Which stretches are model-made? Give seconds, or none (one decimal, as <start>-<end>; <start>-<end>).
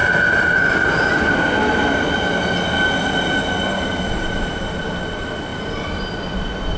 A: none